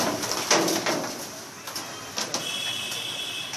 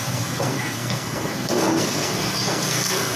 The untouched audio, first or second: first